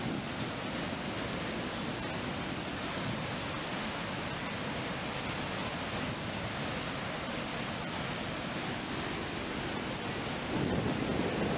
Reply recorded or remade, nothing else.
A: recorded